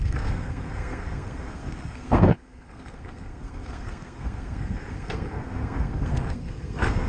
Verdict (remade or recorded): remade